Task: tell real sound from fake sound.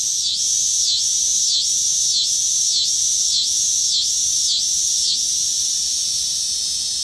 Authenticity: real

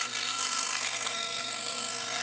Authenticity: fake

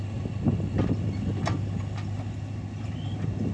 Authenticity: real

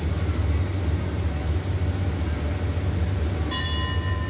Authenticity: real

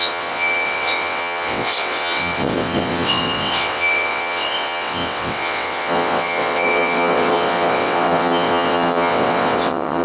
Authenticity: fake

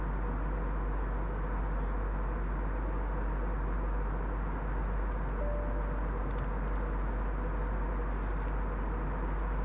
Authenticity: real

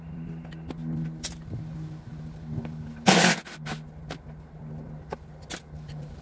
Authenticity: real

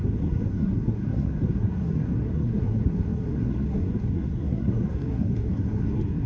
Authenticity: fake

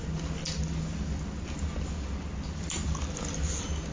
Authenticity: real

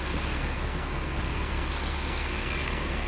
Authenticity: fake